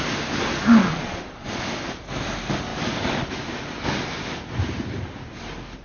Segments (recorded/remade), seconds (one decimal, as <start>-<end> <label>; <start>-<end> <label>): 0.0-0.8 recorded; 0.8-1.6 remade; 1.6-5.8 recorded